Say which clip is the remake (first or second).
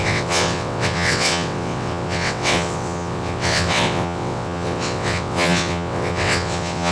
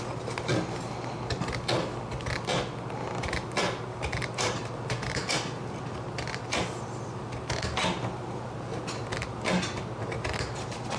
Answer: first